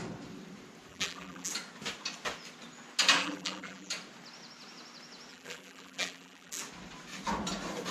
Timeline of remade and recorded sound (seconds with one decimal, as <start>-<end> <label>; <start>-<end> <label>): 0.0-0.9 recorded; 0.9-1.5 remade; 1.5-3.2 recorded; 3.2-3.9 remade; 3.9-5.3 recorded; 5.3-6.6 remade; 6.6-7.9 recorded